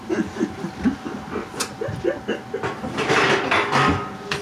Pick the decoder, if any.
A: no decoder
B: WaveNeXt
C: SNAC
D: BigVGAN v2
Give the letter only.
A